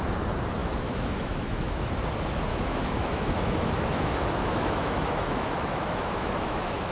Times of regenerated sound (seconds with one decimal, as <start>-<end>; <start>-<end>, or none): 0.6-1.9; 2.5-6.9